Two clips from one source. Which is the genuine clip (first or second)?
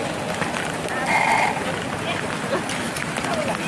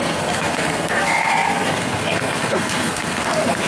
first